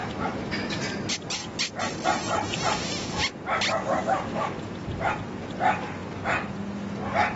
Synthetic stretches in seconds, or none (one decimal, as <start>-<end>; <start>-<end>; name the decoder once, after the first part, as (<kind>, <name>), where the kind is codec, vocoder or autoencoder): 0.0-0.7 (autoencoder, DAC-VAE); 4.3-5.1